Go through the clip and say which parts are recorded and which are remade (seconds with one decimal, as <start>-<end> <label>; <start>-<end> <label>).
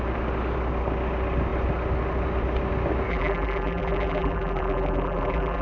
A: 0.0-3.1 recorded; 3.1-5.6 remade